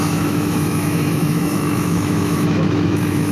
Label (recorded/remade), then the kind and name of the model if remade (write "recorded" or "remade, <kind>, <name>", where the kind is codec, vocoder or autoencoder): remade, autoencoder, DAC-VAE